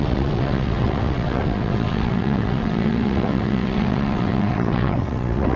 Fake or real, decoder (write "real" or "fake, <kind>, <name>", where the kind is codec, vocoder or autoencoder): fake, vocoder, WaveNeXt